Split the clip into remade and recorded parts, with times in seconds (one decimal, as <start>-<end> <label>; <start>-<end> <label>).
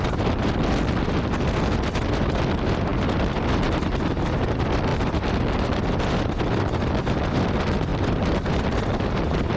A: 0.0-9.6 recorded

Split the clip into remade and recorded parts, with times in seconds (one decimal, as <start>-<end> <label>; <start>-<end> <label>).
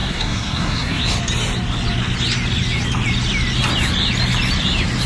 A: 0.0-1.0 remade; 1.0-5.1 recorded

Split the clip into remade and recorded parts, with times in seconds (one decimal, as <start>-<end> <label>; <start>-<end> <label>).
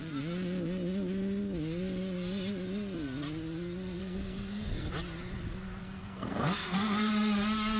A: 0.0-4.0 recorded; 4.0-4.9 remade; 4.9-5.8 recorded; 5.8-7.1 remade; 7.1-7.8 recorded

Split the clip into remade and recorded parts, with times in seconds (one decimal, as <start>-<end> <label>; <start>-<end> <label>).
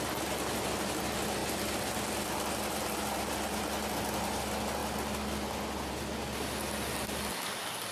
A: 0.0-7.9 recorded